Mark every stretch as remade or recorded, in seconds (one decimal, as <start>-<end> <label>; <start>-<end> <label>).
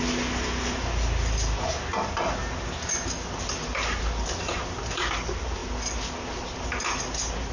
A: 0.0-7.5 recorded